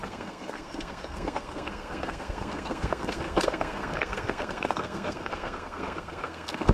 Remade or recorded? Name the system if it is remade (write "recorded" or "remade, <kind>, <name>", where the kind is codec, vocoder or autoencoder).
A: remade, codec, SNAC